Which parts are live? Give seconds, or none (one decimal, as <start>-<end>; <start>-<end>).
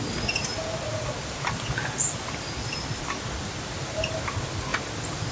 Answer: 0.0-5.3